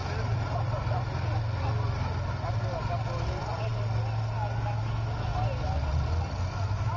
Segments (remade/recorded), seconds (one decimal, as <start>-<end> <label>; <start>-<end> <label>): 0.0-1.0 remade; 1.0-7.0 recorded